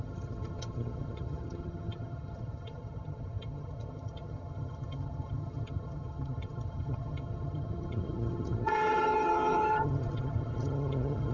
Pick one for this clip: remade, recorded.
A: remade